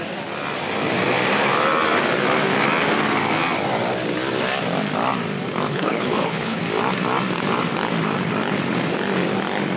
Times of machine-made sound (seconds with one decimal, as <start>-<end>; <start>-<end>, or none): 5.7-6.6